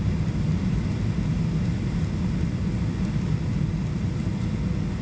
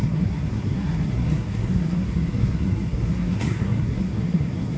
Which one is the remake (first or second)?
second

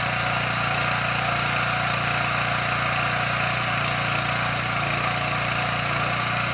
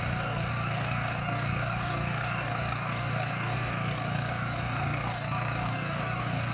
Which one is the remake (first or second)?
second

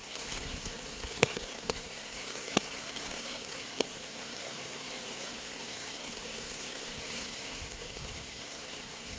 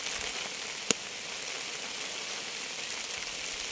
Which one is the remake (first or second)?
first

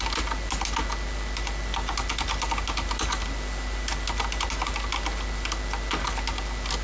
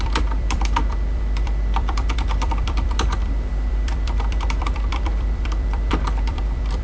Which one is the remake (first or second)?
second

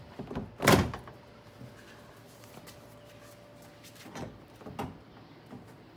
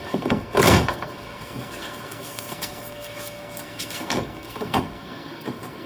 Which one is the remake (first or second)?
second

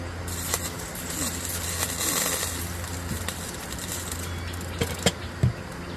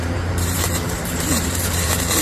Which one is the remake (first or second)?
second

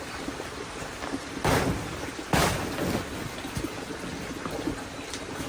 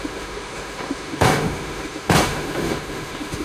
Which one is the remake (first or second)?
second